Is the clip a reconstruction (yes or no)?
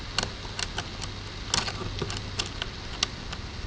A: no